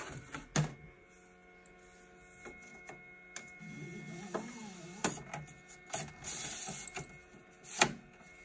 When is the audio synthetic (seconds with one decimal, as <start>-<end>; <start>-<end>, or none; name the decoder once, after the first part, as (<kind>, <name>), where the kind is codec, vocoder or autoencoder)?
none